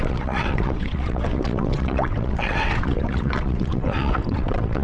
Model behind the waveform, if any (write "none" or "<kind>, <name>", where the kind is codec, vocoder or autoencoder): vocoder, WaveNeXt